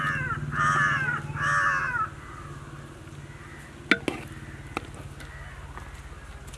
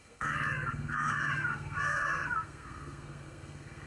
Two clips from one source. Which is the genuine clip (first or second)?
first